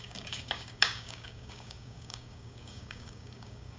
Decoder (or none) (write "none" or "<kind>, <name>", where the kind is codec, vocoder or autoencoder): codec, DAC